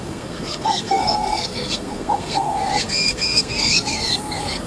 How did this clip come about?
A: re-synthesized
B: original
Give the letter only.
A